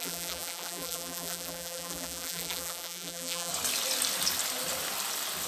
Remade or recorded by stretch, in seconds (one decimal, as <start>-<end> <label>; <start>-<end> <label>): 0.0-3.5 remade; 3.5-5.5 recorded